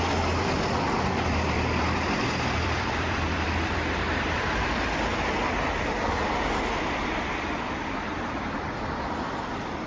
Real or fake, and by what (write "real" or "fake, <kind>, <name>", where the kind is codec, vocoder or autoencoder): fake, vocoder, BigVGAN v2